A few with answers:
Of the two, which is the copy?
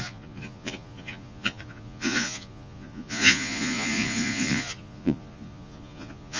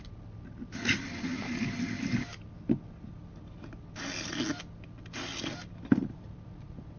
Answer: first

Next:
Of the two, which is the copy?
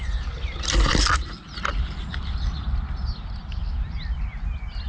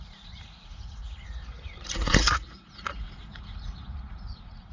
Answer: second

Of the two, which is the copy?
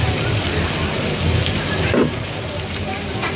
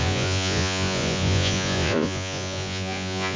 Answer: second